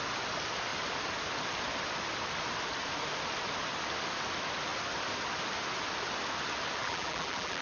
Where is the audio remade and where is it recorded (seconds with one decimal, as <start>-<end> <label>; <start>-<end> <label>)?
0.0-6.8 recorded; 6.8-7.6 remade